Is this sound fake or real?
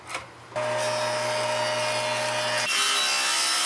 real